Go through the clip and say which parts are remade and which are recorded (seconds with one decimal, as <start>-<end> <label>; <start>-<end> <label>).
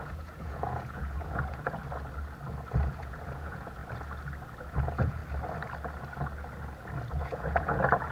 0.0-1.8 remade; 1.8-2.9 recorded; 2.9-3.8 remade; 3.8-4.6 recorded; 4.6-5.2 remade; 5.2-7.1 recorded; 7.1-8.1 remade